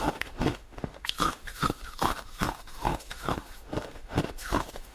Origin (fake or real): fake